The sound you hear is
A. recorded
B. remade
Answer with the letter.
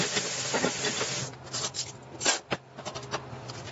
A